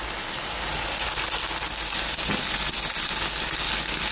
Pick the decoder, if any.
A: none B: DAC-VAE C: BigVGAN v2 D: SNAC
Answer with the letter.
A